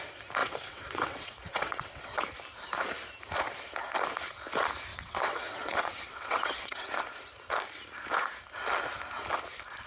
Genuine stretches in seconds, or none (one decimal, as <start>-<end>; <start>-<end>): 0.0-0.4; 2.2-4.9; 6.8-9.9